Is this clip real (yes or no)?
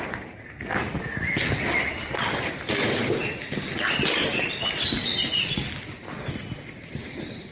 yes